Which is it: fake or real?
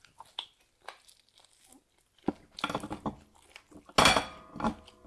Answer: real